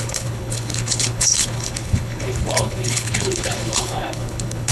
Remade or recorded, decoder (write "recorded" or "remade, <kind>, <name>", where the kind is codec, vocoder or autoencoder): remade, codec, HILCodec